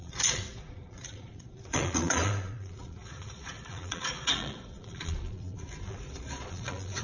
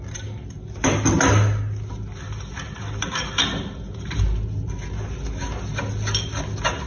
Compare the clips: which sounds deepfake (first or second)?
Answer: first